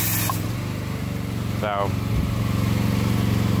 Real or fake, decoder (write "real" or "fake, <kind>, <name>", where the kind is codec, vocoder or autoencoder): real